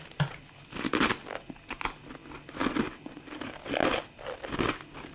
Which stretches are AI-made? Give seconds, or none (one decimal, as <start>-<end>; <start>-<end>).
none